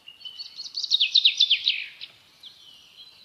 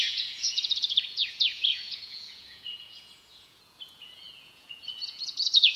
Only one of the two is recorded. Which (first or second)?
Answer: first